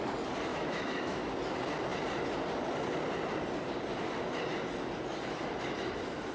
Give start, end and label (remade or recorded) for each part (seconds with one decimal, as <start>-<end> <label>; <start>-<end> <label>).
0.0-0.5 recorded; 0.5-1.3 remade; 1.3-6.3 recorded